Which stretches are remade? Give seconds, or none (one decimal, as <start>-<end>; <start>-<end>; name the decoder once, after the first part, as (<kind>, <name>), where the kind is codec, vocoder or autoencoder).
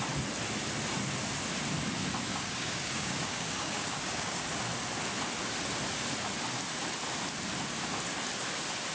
2.3-4.4 (codec, DAC)